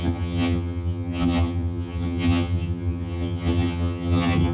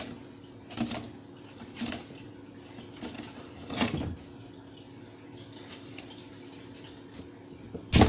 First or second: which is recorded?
second